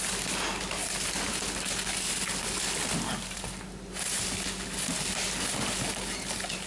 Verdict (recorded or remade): recorded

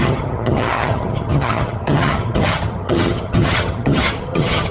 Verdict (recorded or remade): remade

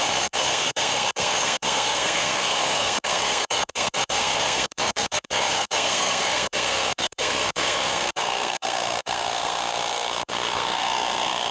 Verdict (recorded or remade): remade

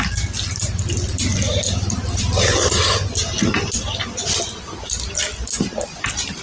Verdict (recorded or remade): recorded